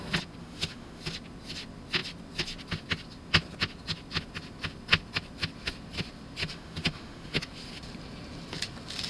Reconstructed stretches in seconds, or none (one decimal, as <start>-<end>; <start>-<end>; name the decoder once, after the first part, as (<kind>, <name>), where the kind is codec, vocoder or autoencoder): 0.4-1.0 (autoencoder, DAC-VAE); 6.4-7.4

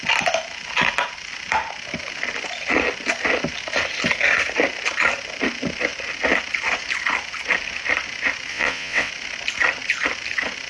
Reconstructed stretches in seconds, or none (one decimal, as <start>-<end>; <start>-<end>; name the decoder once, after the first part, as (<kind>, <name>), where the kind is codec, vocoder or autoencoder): 8.5-9.1 (vocoder, WaveNeXt)

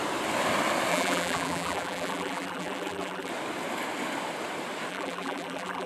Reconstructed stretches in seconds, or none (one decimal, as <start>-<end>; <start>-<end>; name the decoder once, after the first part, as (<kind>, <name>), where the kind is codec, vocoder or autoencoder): 0.9-3.3 (vocoder, BigVGAN v2); 4.9-5.9

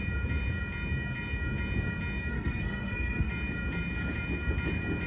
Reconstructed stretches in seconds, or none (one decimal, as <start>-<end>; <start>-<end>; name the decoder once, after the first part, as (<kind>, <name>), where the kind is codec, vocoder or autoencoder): 2.3-3.3 (codec, SNAC)